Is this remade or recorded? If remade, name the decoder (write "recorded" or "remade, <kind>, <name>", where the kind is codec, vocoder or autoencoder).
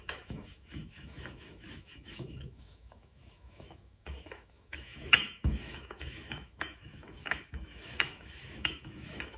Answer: remade, autoencoder, DAC-VAE